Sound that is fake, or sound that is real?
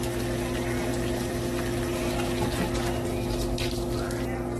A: real